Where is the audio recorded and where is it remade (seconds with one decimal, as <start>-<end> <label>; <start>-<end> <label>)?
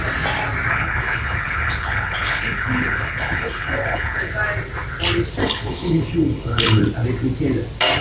0.0-0.7 recorded; 0.7-4.3 remade; 4.3-5.4 recorded; 5.4-6.8 remade; 6.8-8.0 recorded